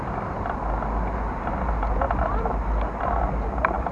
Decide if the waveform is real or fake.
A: real